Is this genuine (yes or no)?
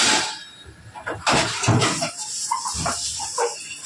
no